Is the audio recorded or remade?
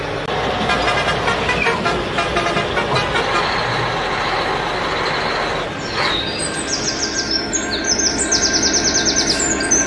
recorded